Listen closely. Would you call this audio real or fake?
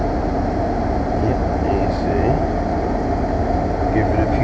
real